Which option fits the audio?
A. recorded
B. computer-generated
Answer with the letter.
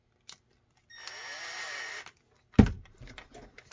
A